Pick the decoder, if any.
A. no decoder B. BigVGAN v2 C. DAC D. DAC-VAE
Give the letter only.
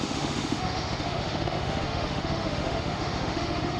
D